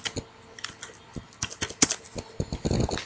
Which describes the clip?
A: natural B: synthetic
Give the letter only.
A